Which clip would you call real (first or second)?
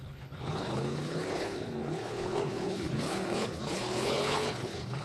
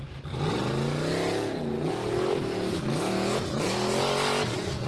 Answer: second